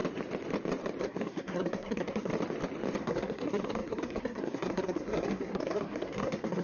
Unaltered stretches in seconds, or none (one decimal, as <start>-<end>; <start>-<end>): 0.0-1.0; 2.3-3.0